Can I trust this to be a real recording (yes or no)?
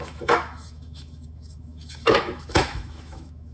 no